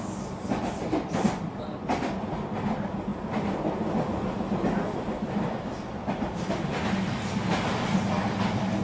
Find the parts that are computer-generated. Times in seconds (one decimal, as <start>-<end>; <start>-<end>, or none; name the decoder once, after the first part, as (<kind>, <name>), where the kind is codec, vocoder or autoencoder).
none